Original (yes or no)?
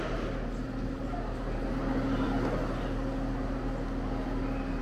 yes